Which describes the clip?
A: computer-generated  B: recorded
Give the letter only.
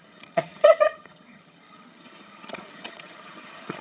A